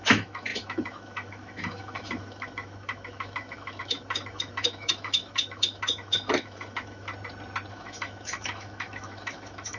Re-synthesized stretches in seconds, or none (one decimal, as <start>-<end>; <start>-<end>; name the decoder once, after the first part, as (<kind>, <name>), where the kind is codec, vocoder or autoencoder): 0.0-7.1 (autoencoder, DAC-VAE); 7.7-9.8

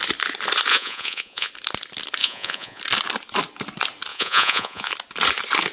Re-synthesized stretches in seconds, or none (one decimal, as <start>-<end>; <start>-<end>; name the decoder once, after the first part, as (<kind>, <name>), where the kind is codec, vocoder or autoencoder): 0.7-1.5 (vocoder, Vocos); 2.2-2.8; 4.1-4.9

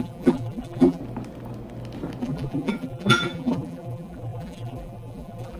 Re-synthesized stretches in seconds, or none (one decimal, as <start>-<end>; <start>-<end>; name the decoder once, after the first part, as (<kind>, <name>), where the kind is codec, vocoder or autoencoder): 0.0-1.0 (vocoder, BigVGAN v2); 2.2-5.6

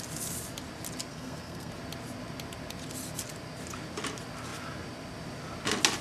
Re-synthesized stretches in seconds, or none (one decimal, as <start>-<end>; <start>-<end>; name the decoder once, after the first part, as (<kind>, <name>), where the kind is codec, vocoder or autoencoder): 1.1-1.7 (codec, SNAC)

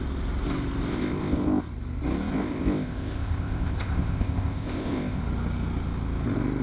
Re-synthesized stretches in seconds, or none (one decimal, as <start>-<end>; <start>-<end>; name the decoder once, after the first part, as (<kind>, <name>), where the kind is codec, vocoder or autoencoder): 0.9-1.6 (codec, ZipCodec); 2.3-5.2